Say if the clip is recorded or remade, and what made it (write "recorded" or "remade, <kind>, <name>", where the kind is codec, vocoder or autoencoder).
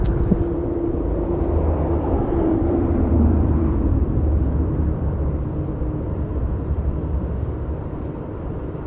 remade, vocoder, BigVGAN v2